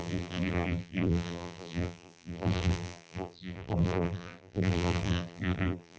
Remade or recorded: remade